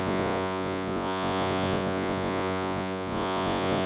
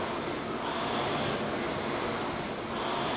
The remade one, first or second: first